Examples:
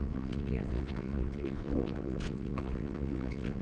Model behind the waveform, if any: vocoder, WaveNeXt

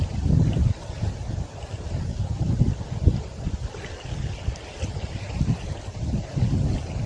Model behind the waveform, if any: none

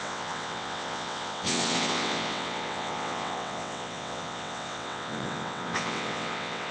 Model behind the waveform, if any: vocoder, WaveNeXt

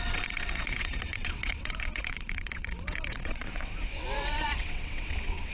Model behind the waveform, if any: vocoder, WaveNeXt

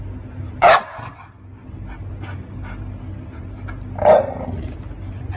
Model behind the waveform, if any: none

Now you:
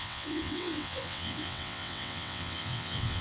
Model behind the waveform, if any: vocoder, WaveNeXt